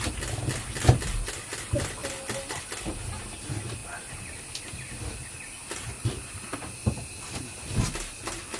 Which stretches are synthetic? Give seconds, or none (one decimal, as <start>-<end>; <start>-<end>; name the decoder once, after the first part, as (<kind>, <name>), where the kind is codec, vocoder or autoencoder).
none